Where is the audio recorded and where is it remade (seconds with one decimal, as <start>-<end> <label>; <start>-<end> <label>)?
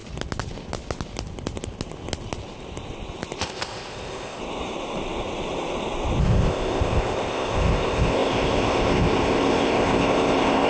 0.0-3.4 recorded; 3.4-4.4 remade; 4.4-6.2 recorded; 6.2-10.7 remade